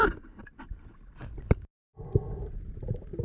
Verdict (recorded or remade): recorded